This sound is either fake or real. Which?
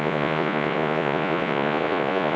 fake